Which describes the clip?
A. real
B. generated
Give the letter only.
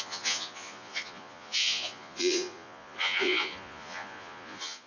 B